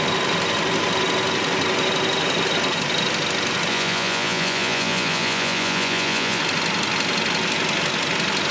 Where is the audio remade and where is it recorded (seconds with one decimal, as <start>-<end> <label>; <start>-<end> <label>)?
0.0-3.7 recorded; 3.7-6.4 remade; 6.4-8.5 recorded